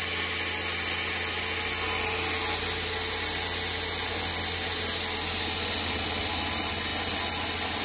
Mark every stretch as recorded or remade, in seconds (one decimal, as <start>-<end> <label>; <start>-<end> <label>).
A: 0.0-7.8 recorded